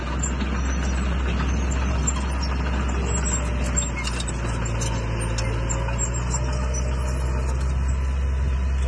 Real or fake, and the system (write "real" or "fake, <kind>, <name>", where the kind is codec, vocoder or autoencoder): real